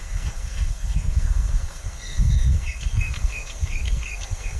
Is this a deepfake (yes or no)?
yes